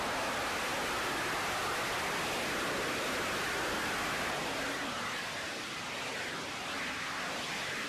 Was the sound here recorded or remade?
recorded